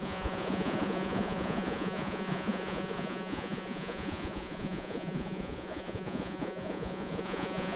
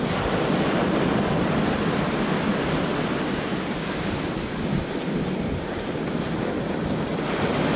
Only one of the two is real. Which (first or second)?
second